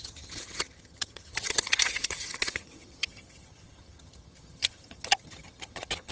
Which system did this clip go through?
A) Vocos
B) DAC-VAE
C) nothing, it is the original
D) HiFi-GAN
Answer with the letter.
D